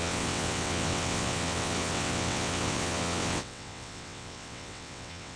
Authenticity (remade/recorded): remade